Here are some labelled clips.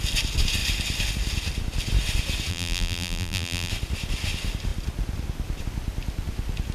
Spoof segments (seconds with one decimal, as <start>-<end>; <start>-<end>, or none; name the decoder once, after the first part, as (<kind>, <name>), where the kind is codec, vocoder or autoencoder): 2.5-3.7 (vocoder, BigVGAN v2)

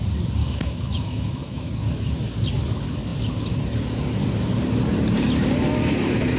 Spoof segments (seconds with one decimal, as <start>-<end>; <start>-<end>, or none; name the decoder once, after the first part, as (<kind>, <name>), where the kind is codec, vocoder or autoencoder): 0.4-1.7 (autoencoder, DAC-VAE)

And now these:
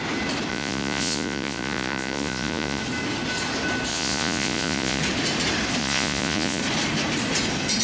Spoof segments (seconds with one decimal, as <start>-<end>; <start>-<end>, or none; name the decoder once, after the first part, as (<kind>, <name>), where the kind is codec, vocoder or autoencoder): 0.5-2.8 (vocoder, Vocos); 3.9-5.0; 5.8-6.6

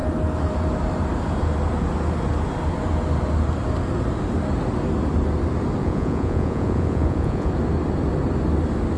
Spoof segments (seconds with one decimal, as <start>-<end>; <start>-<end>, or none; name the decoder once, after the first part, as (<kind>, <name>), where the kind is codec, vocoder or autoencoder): 5.8-7.5 (vocoder, Vocos)

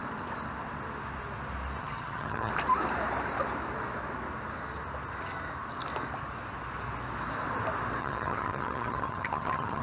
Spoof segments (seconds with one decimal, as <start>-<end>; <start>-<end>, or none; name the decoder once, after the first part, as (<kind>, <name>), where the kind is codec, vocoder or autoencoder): 1.8-2.5 (vocoder, HiFi-GAN); 8.0-9.8

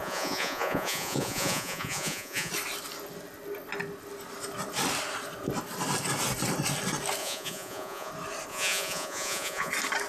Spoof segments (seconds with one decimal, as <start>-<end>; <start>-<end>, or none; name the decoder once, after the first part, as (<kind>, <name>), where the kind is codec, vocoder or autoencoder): 0.0-2.5 (vocoder, Vocos); 7.2-8.1; 8.5-9.7

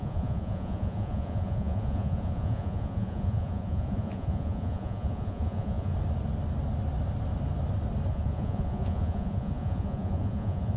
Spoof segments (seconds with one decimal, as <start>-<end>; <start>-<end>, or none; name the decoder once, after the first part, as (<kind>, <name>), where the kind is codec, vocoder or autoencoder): 0.0-5.9 (vocoder, Vocos); 8.1-10.8